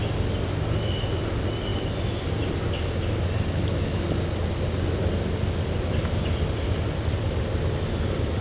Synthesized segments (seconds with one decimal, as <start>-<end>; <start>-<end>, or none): none